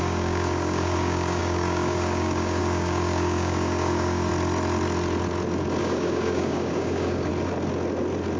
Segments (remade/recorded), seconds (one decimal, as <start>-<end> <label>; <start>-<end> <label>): 0.0-4.3 remade; 4.3-5.8 recorded; 5.8-7.3 remade; 7.3-8.4 recorded